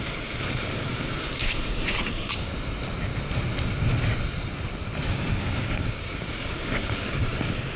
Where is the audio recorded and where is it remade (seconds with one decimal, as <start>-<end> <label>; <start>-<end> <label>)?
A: 0.0-2.5 remade; 2.5-5.1 recorded; 5.1-7.8 remade